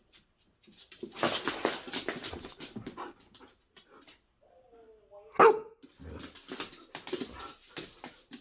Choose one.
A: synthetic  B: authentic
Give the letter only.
B